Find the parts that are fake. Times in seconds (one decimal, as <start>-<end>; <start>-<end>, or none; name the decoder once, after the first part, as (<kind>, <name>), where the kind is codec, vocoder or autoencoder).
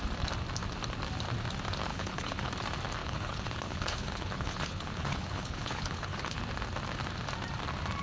1.9-2.5 (codec, HILCodec); 3.0-6.4